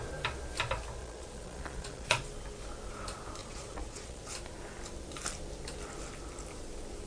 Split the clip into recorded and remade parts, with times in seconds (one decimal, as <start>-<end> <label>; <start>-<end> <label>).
0.0-1.0 recorded; 1.0-2.2 remade; 2.2-3.4 recorded; 3.4-4.2 remade; 4.2-7.1 recorded